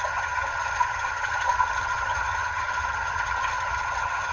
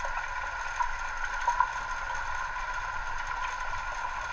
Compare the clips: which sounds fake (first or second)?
first